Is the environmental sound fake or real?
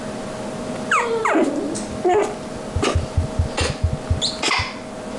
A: real